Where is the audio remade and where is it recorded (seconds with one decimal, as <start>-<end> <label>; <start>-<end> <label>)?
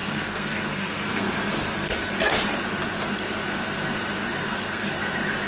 0.0-2.1 remade; 2.1-4.4 recorded; 4.4-4.9 remade; 4.9-5.5 recorded